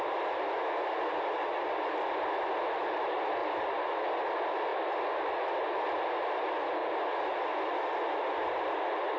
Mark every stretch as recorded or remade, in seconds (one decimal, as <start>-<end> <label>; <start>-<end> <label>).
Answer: 0.0-9.2 recorded